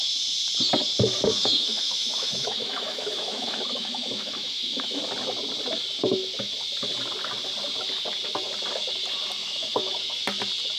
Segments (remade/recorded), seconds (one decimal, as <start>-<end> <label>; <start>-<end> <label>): 0.0-1.4 recorded; 1.4-5.0 remade; 5.0-9.4 recorded; 9.4-10.1 remade; 10.1-10.8 recorded